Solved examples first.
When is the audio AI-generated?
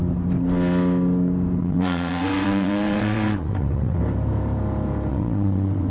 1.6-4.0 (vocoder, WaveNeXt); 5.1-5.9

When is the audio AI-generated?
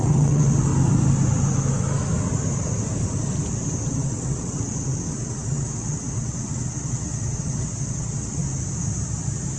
0.0-0.7 (vocoder, WaveNeXt); 3.8-8.4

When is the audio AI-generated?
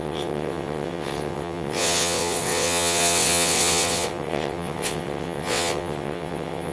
0.0-6.7 (vocoder, WaveNeXt)